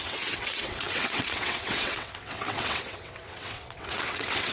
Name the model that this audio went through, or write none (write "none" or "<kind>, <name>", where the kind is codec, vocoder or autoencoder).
vocoder, WaveNeXt